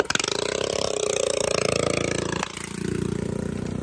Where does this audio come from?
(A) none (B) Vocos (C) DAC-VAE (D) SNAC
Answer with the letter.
A